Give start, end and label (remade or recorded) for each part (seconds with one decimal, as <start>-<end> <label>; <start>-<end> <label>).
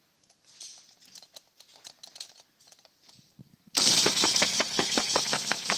0.0-3.4 recorded; 3.4-5.8 remade